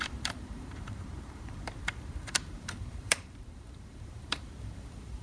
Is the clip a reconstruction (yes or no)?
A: yes